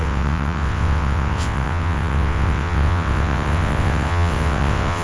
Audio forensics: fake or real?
fake